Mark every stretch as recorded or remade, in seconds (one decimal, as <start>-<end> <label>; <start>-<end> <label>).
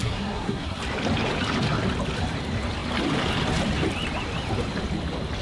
0.0-0.8 remade; 0.8-5.4 recorded